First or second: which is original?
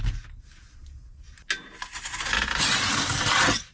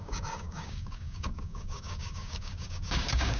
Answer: first